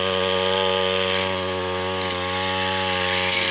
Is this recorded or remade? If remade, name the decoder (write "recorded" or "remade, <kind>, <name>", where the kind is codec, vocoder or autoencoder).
recorded